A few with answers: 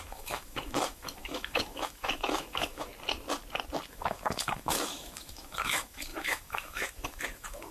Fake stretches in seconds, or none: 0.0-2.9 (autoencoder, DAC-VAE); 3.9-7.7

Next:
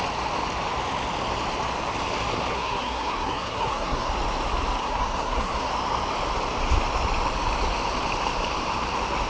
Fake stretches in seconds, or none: 2.5-4.1 (codec, SNAC); 4.8-5.7

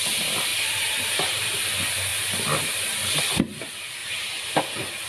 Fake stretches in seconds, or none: 0.5-1.7 (vocoder, BigVGAN v2); 2.1-3.2; 4.0-4.6

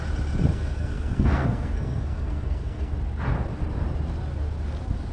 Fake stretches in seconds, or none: 0.5-2.9 (codec, SNAC)